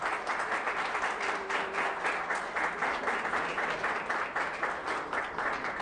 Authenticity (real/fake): real